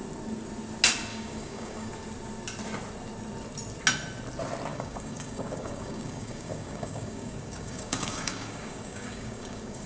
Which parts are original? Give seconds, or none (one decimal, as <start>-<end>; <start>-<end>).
0.0-1.1; 1.9-4.7